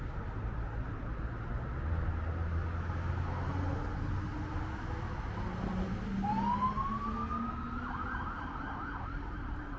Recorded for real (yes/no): yes